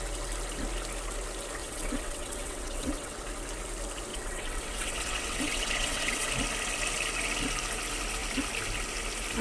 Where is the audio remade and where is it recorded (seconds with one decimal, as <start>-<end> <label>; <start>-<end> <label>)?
0.0-1.6 recorded; 1.6-3.2 remade; 3.2-4.1 recorded; 4.1-6.3 remade; 6.3-9.4 recorded